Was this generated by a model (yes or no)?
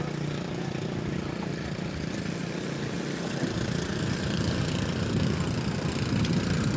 no